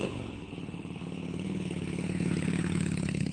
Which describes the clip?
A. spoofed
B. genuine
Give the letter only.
A